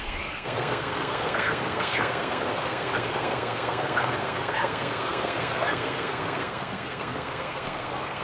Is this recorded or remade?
remade